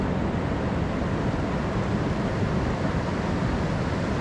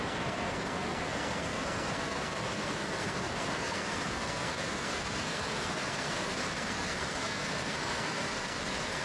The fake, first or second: second